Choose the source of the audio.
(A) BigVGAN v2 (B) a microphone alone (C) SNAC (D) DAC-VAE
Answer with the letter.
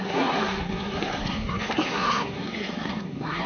C